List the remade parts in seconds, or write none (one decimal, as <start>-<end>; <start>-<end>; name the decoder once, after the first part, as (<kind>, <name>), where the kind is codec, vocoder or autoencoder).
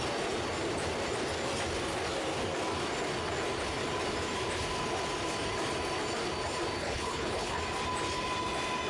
6.8-7.6 (codec, HILCodec)